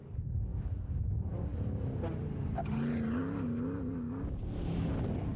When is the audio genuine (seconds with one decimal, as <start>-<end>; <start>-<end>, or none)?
0.0-5.4